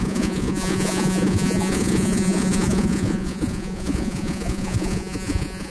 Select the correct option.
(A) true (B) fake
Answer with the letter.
B